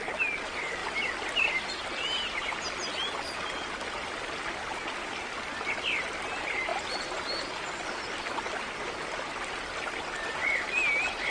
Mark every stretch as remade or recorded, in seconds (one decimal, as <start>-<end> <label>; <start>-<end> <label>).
0.0-11.3 recorded